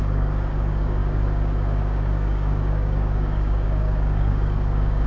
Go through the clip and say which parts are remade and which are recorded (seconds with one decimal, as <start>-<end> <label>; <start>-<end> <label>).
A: 0.0-5.1 remade